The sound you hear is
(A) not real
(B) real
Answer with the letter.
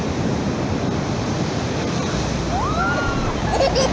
A